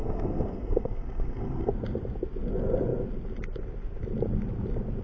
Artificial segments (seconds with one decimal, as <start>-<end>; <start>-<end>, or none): 0.0-1.7